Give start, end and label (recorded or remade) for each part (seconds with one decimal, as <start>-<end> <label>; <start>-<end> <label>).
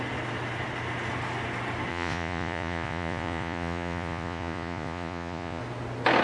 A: 0.0-1.9 recorded; 1.9-5.6 remade; 5.6-6.2 recorded